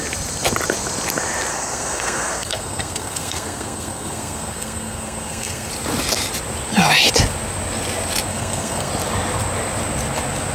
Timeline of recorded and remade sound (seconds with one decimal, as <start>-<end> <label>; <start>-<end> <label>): 0.0-1.5 recorded; 1.5-5.7 remade; 5.7-8.3 recorded; 8.3-8.9 remade; 8.9-10.5 recorded